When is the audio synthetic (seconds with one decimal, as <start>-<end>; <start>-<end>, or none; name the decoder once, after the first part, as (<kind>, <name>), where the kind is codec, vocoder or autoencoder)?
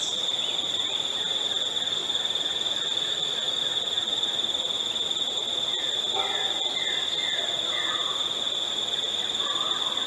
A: none